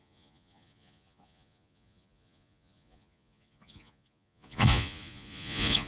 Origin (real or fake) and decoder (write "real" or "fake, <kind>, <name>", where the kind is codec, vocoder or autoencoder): fake, vocoder, Vocos